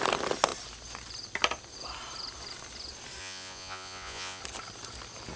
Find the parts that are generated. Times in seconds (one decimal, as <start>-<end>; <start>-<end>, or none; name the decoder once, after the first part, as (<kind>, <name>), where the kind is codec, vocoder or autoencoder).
3.2-4.4 (vocoder, Vocos)